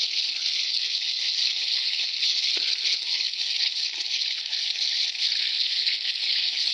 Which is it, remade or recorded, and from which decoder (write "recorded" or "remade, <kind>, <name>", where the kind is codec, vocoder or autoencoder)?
remade, codec, HILCodec